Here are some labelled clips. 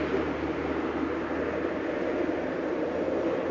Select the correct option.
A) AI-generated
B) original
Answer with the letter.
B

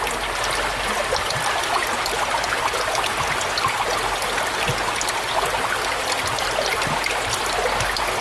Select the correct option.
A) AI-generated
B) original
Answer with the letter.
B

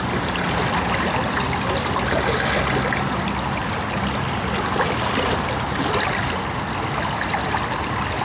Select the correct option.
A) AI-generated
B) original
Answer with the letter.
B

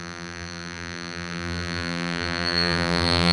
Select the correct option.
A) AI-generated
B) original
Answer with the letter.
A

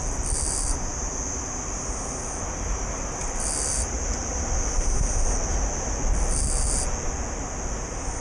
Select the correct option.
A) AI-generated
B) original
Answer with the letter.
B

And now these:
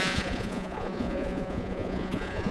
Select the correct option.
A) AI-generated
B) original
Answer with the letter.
A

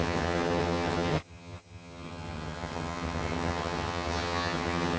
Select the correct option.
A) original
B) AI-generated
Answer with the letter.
B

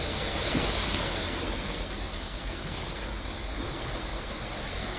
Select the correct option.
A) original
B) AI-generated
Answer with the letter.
B